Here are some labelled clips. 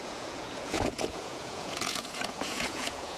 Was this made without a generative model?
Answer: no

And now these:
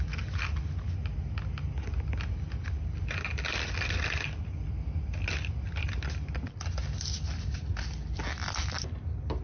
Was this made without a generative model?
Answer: yes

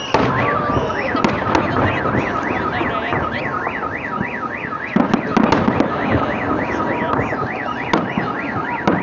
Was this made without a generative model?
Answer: yes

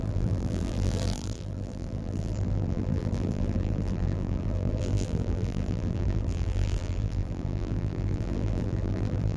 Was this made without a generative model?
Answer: no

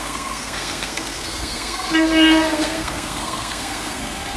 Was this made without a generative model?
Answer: no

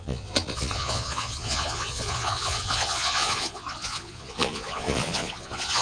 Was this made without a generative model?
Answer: no